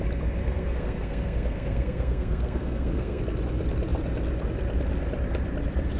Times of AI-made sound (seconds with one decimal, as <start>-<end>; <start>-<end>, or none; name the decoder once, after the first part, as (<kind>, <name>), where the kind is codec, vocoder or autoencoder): 0.4-3.2 (codec, SNAC)